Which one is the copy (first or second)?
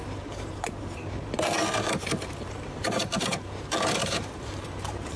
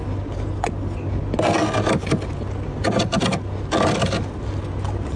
first